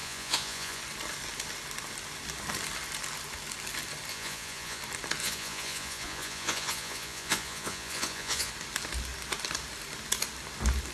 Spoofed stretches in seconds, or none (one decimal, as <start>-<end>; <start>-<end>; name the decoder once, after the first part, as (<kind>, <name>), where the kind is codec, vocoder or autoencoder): 0.0-0.8 (vocoder, Vocos); 4.1-4.8; 5.2-8.5